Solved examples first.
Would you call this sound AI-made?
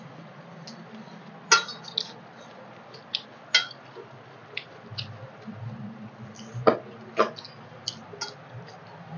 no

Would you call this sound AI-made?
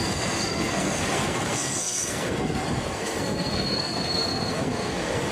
yes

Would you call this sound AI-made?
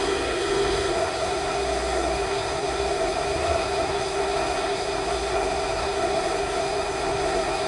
yes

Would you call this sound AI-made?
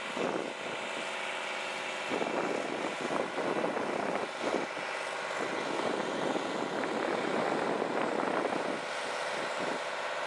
no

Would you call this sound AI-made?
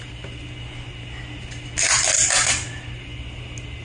no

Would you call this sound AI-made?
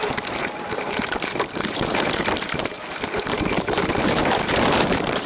yes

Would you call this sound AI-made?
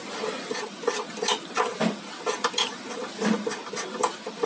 no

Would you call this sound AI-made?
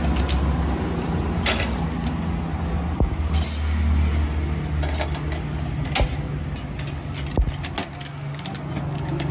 no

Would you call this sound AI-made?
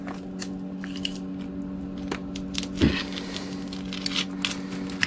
no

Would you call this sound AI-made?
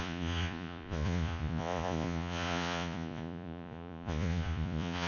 yes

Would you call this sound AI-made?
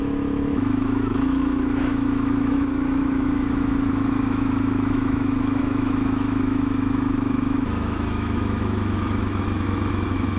yes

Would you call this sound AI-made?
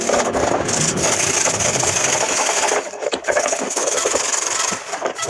yes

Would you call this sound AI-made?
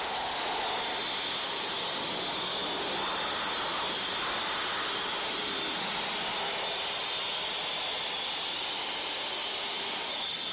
no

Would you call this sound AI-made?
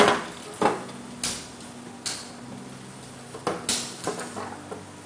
no